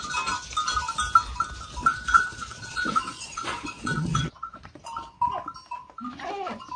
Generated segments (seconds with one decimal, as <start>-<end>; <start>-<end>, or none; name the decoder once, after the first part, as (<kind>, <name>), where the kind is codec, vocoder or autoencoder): 1.9-4.8 (vocoder, Vocos)